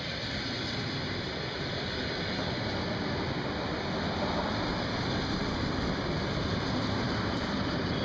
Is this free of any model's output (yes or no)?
yes